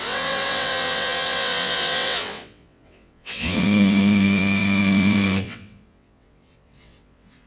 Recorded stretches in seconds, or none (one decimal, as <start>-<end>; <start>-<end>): none